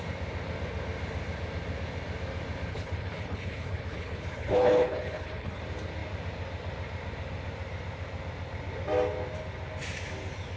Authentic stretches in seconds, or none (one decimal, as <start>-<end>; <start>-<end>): 0.0-2.7; 5.6-10.6